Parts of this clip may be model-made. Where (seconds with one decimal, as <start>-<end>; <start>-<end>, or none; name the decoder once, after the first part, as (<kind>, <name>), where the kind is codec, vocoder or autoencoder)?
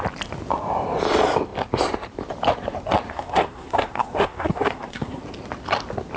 3.1-5.2 (codec, SNAC)